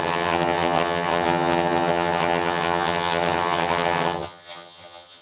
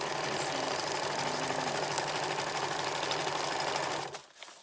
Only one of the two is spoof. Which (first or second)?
first